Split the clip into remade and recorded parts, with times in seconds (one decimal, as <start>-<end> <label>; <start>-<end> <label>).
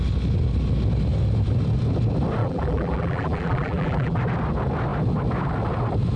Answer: 0.0-2.4 recorded; 2.4-4.2 remade; 4.2-6.2 recorded